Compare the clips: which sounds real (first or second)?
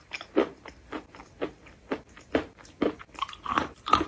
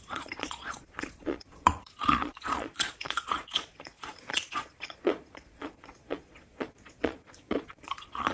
first